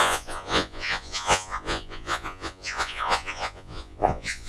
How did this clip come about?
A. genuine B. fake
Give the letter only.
B